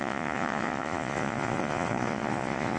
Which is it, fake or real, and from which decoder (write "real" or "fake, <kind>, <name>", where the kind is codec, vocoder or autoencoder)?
fake, vocoder, Vocos